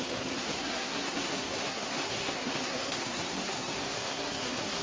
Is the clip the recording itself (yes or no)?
no